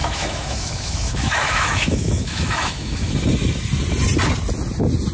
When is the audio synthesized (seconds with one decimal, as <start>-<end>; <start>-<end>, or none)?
0.0-3.1